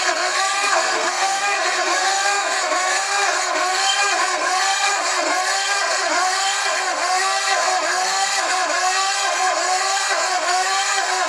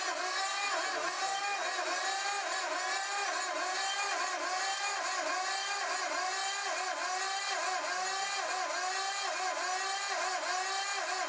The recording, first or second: second